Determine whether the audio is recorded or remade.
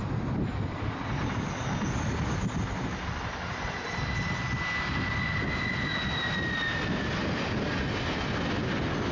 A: recorded